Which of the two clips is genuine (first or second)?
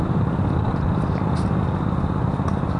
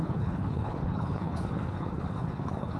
first